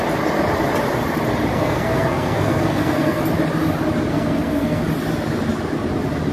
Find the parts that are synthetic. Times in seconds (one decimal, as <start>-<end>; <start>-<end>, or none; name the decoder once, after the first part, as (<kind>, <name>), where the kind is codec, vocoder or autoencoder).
1.5-3.2 (codec, SNAC); 4.1-4.8

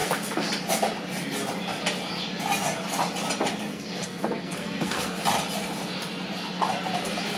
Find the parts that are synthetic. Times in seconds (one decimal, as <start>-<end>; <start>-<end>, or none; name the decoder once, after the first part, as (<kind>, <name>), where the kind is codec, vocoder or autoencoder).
0.0-0.5 (codec, SNAC); 3.7-5.2

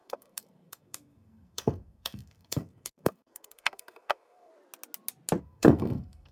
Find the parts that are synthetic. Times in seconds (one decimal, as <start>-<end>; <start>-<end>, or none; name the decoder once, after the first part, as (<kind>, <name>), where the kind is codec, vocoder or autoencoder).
0.0-4.5 (codec, SNAC); 5.4-6.3

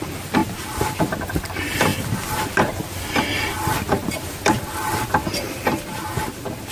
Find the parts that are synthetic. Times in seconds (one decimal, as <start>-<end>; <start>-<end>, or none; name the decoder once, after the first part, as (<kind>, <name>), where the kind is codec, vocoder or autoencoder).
none

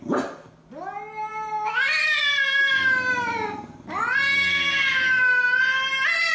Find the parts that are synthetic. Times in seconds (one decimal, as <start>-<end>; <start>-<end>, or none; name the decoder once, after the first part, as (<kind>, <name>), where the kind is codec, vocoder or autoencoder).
none

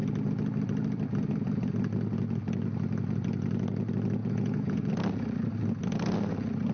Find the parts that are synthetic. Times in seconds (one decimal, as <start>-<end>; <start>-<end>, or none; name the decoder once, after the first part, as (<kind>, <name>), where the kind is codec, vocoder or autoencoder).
4.2-4.9 (vocoder, Vocos)

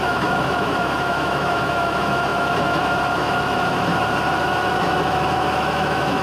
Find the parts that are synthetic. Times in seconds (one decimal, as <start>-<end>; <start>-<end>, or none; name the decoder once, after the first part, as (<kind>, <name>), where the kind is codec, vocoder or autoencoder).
0.0-3.9 (autoencoder, DAC-VAE); 4.4-6.2

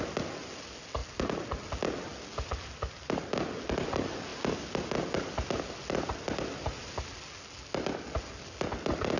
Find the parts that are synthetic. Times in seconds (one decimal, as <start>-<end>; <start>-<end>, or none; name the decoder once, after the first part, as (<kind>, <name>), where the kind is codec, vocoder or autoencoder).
none